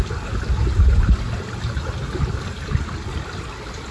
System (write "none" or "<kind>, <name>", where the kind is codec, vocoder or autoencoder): none